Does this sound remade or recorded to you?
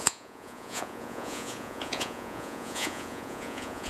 remade